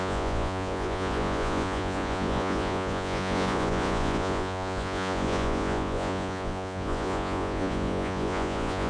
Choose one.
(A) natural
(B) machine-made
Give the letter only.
B